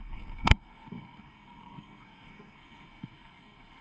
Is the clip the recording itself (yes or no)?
no